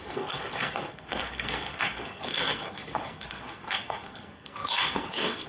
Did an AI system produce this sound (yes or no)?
yes